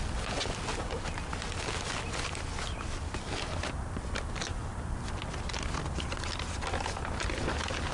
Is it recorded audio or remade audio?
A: recorded